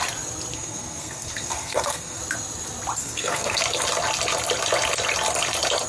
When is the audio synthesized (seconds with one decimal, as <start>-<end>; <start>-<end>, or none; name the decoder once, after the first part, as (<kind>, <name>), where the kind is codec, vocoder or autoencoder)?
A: 0.5-2.2 (codec, SNAC); 3.0-3.6